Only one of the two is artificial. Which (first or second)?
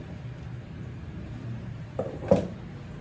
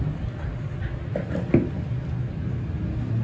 first